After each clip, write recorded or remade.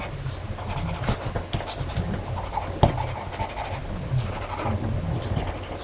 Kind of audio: recorded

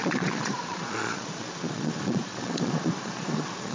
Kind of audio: remade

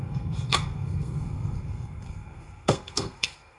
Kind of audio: remade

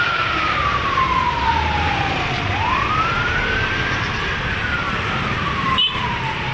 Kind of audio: remade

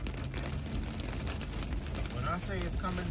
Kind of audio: recorded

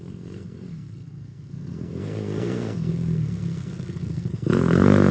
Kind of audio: remade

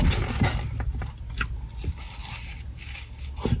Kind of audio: recorded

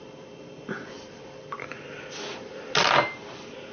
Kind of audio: recorded